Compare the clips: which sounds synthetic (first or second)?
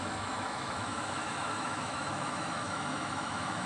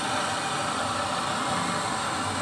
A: first